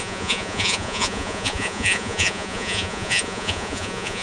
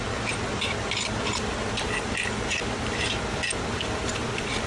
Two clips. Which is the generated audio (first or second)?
first